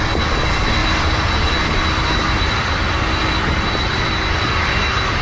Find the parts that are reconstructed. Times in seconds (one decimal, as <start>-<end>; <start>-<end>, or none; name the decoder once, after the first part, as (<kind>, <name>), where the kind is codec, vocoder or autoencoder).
none